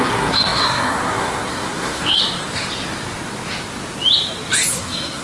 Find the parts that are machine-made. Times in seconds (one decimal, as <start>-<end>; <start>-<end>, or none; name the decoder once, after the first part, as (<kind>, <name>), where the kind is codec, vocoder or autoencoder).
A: 0.0-2.2 (codec, SNAC); 4.7-5.2